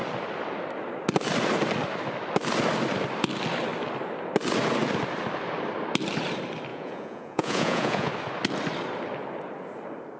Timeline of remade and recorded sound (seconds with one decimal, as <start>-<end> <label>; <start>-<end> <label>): 0.0-6.7 recorded; 6.7-8.1 remade; 8.1-10.2 recorded